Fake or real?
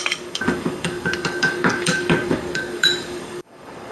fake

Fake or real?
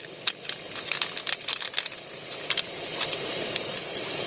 real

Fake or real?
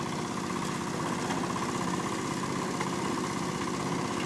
real